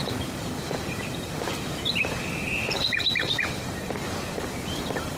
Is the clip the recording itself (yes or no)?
no